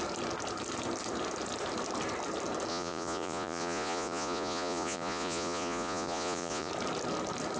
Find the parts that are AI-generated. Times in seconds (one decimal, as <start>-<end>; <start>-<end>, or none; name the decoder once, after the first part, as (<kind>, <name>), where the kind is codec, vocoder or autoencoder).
2.7-6.7 (vocoder, Vocos)